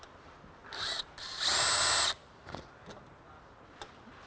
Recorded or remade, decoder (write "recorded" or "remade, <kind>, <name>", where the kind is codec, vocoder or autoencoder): recorded